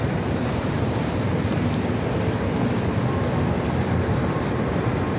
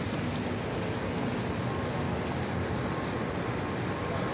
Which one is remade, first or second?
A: first